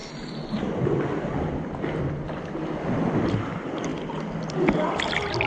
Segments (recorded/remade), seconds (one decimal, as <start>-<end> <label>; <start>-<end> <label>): 0.0-5.5 recorded